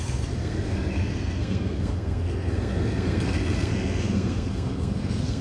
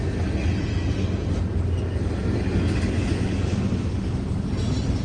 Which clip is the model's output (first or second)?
first